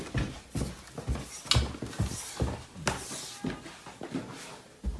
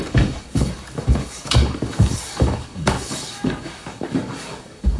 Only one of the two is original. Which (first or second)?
first